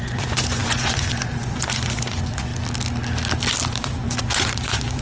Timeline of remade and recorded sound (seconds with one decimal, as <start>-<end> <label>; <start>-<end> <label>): 0.0-2.5 remade; 2.5-3.8 recorded; 3.8-5.0 remade